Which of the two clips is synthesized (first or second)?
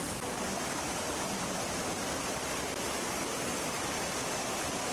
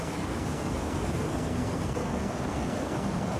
second